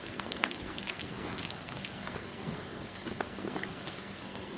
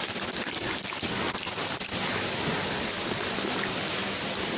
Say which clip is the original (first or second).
second